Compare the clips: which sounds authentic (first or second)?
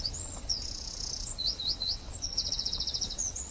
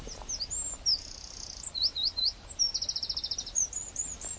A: second